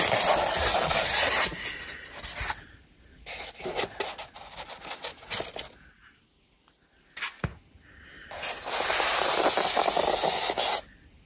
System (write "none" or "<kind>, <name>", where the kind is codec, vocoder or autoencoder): none